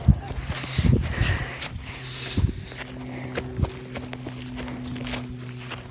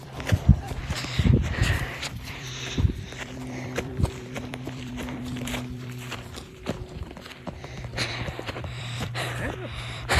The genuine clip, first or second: first